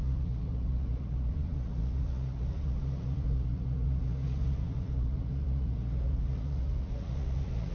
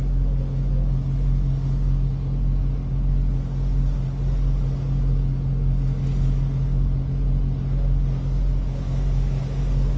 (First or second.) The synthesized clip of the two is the first